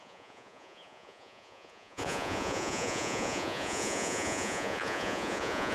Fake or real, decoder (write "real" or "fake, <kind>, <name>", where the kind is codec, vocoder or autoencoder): fake, vocoder, Vocos